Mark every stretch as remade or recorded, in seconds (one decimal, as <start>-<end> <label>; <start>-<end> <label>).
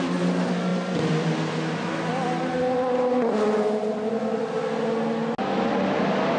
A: 0.0-6.4 recorded